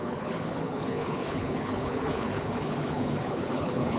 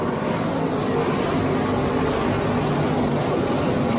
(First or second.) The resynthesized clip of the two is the first